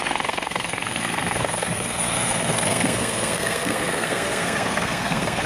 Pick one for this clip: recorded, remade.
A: remade